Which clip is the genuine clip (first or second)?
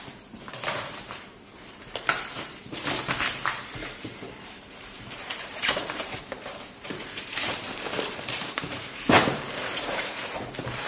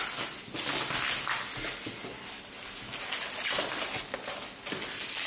second